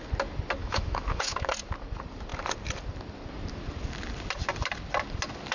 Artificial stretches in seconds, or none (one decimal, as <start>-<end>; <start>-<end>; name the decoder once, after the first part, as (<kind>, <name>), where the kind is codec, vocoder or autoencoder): 0.6-1.5 (autoencoder, DAC-VAE)